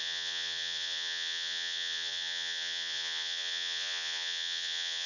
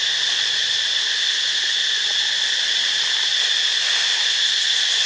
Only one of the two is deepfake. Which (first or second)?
first